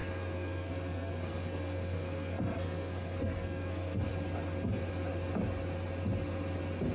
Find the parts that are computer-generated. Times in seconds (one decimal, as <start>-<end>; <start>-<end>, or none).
0.0-4.1